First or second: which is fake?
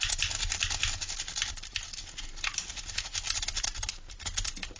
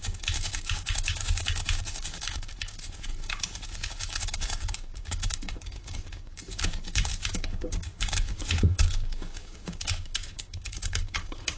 second